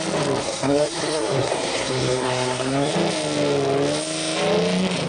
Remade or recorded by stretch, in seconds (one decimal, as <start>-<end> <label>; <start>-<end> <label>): 0.0-0.4 recorded; 0.4-2.9 remade; 2.9-5.1 recorded